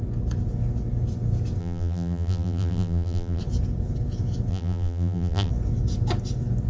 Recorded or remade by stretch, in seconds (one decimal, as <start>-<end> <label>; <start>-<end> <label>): 0.0-1.6 recorded; 1.6-3.4 remade; 3.4-4.5 recorded; 4.5-5.5 remade; 5.5-6.7 recorded